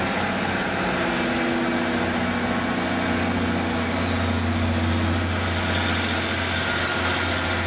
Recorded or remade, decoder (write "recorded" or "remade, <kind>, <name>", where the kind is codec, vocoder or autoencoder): recorded